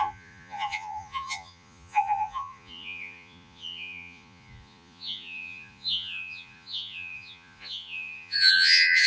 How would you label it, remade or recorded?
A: remade